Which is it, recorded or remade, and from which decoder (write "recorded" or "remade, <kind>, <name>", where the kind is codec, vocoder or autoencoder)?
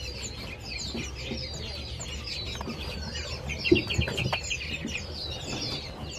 recorded